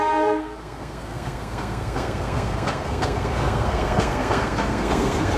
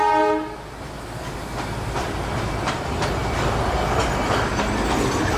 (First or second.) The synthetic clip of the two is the first